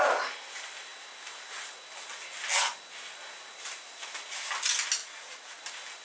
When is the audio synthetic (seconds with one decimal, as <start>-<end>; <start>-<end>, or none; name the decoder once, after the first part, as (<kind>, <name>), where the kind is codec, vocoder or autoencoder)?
5.0-5.6 (vocoder, Vocos)